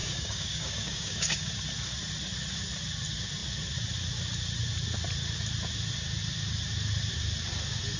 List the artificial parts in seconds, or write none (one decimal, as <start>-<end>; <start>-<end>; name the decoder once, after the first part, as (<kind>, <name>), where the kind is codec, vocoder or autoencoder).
0.0-1.5 (codec, DAC)